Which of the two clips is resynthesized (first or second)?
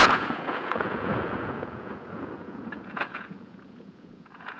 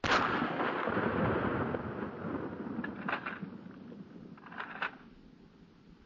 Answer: first